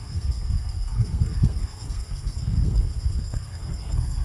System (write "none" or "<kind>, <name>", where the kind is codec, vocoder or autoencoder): codec, SNAC